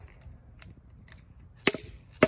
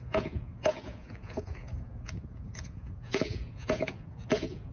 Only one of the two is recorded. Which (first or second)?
first